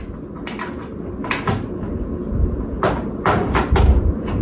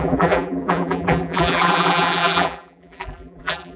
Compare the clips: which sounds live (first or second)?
first